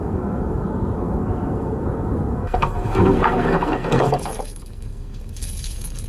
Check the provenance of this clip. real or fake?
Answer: fake